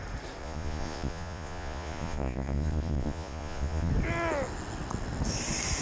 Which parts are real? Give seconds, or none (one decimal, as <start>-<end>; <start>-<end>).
0.0-0.4; 3.9-5.8